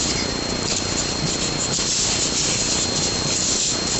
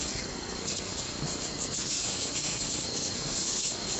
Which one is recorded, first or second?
first